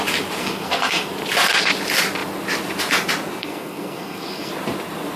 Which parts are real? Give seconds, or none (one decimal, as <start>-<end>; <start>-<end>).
0.0-0.4; 1.1-3.4; 4.5-5.2